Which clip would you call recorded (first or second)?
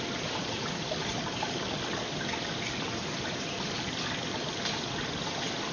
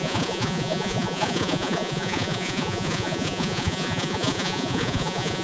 first